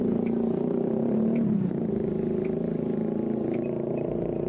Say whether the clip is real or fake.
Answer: fake